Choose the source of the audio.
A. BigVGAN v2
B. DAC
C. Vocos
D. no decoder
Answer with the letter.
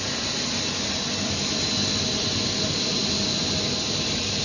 D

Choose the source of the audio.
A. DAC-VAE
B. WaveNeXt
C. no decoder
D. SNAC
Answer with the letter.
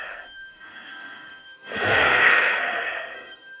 D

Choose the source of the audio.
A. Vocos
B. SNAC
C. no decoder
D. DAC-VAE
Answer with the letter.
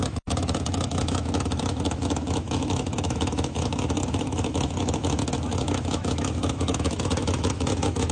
D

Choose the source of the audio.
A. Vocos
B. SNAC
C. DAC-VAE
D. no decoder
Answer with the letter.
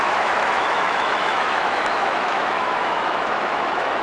C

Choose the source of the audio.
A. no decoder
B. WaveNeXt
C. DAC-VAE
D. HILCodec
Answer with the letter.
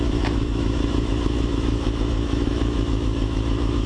C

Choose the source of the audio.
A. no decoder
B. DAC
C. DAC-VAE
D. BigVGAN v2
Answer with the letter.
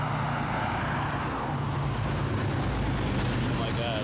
A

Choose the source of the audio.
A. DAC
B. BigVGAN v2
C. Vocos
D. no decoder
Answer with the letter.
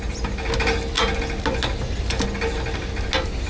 D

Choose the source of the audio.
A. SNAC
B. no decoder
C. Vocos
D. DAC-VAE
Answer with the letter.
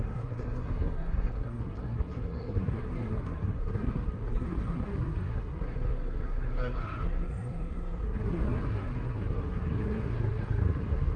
A